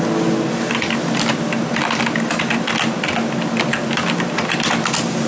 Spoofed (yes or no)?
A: no